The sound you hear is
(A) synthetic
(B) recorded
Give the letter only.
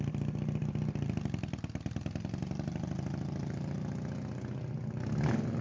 B